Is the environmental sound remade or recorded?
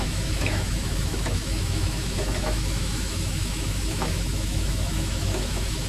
remade